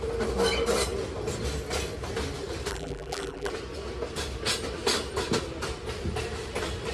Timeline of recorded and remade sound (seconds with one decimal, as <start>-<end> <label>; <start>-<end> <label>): 0.0-2.7 recorded; 2.7-3.5 remade; 3.5-6.9 recorded